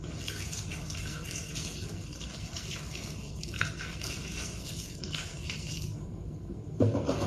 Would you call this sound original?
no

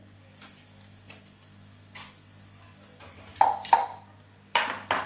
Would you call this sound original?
yes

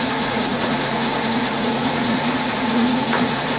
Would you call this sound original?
no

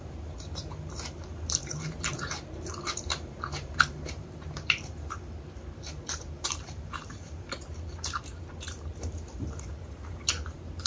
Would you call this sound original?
no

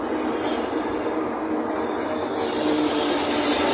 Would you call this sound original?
yes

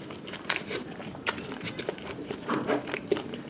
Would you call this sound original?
no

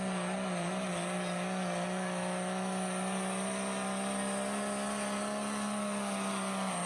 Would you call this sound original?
yes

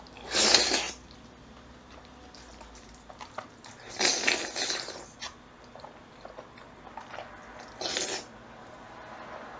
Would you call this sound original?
yes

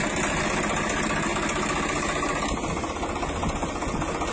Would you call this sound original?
yes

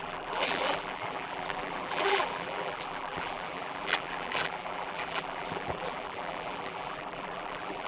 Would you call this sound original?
no